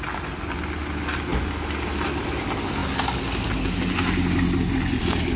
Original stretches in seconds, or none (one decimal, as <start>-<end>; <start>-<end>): 0.0-5.4